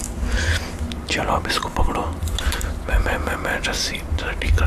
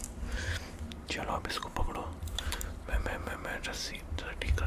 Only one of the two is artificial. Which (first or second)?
second